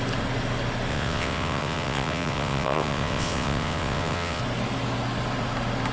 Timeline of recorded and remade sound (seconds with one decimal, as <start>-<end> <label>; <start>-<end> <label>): 0.0-0.9 recorded; 0.9-4.4 remade; 4.4-5.9 recorded